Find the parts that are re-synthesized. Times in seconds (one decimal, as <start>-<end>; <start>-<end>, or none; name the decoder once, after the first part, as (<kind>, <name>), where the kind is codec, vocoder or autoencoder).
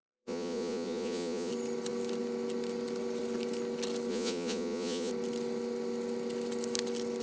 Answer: 0.0-1.5 (vocoder, Vocos); 4.1-5.1